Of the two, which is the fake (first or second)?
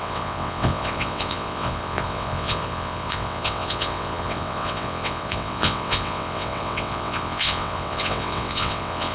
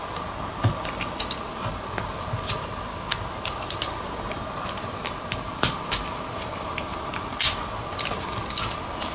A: first